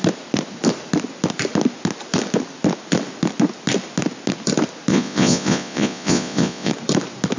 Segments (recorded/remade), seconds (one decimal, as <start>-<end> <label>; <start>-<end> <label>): 0.0-4.9 recorded; 4.9-6.7 remade; 6.7-7.4 recorded